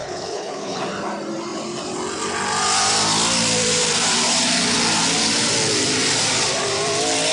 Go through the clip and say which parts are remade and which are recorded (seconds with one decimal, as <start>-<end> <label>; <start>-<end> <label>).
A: 0.0-0.8 remade; 0.8-7.3 recorded